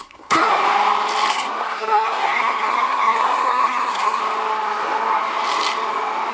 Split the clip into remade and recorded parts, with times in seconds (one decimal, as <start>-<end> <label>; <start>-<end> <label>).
0.0-0.6 remade; 0.6-1.3 recorded; 1.3-4.2 remade; 4.2-6.3 recorded